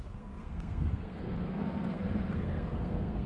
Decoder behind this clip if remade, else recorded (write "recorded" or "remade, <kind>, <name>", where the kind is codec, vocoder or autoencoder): remade, codec, SNAC